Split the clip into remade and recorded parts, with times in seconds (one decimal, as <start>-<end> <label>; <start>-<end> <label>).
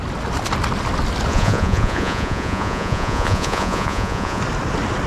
0.0-1.3 recorded; 1.3-4.4 remade; 4.4-5.1 recorded